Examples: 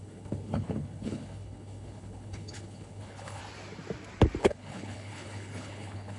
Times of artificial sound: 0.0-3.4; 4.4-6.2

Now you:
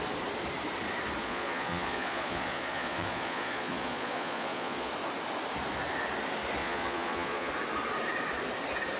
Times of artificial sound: 1.2-4.9; 6.6-7.5

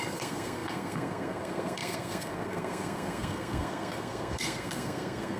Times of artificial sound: 0.0-5.4

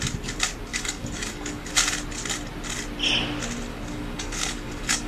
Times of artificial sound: 0.7-1.7; 3.7-5.1